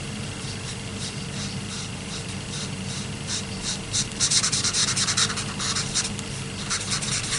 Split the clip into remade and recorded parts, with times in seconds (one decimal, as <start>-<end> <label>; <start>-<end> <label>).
0.0-4.8 remade; 4.8-7.4 recorded